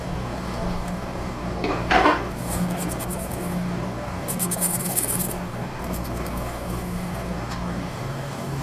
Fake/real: fake